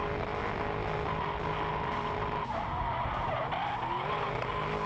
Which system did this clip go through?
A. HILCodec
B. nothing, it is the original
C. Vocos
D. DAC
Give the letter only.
B